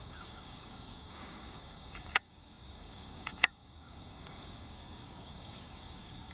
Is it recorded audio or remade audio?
remade